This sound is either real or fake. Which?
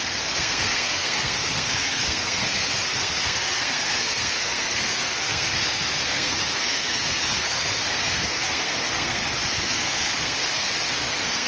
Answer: fake